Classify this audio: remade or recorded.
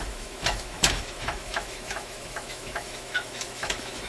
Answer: remade